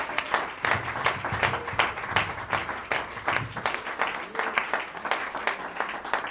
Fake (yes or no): no